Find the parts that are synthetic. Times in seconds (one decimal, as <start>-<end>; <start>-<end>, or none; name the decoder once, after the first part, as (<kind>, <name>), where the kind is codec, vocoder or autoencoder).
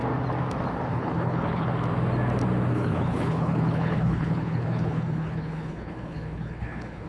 0.9-1.7 (codec, HILCodec); 2.7-7.1